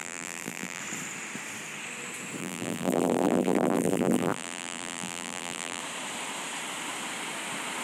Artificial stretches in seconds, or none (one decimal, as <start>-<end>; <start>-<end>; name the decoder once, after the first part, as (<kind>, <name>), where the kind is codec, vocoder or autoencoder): 0.0-0.8 (vocoder, BigVGAN v2); 2.4-5.8